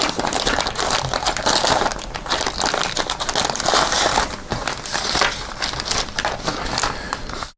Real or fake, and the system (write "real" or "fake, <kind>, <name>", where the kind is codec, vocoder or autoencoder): real